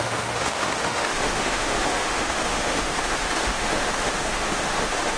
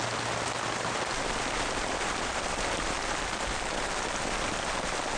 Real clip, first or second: second